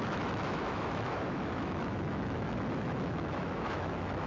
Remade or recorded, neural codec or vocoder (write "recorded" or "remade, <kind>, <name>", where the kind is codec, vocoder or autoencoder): remade, autoencoder, DAC-VAE